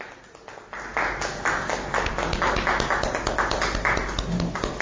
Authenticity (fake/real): real